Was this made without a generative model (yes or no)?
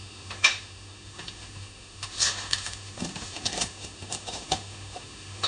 no